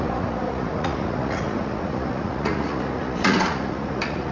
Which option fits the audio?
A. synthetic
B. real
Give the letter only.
A